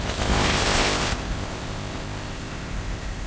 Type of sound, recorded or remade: remade